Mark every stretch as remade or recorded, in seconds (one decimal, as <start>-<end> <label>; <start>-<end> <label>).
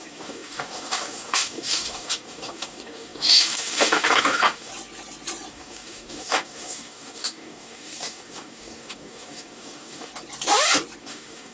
0.0-4.7 remade; 4.7-5.5 recorded; 5.5-10.1 remade; 10.1-11.0 recorded; 11.0-11.5 remade